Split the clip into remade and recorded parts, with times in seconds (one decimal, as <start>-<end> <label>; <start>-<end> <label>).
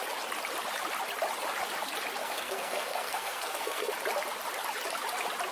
0.0-2.2 recorded; 2.2-3.9 remade; 3.9-5.5 recorded